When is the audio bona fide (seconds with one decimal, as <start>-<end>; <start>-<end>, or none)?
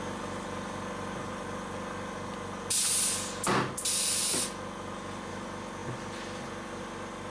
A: 0.0-7.3